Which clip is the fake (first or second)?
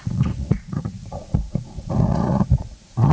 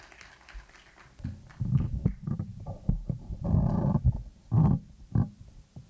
first